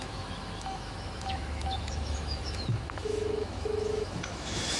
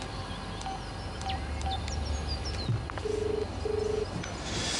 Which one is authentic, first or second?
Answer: second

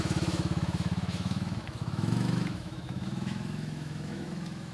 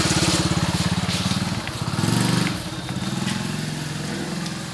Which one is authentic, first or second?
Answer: second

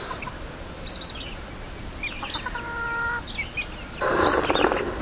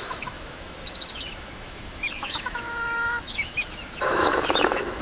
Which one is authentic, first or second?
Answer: first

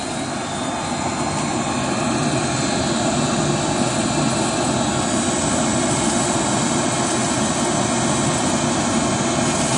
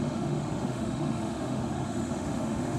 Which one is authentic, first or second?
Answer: first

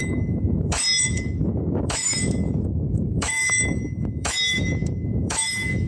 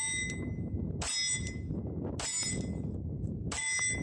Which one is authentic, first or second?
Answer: second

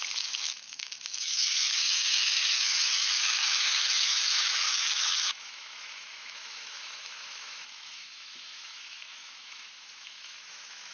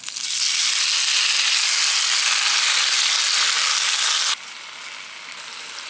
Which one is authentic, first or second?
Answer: second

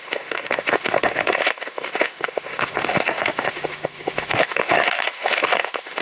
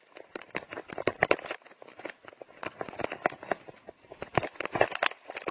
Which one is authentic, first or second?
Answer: second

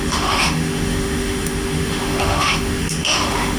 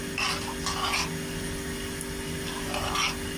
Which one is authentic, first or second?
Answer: second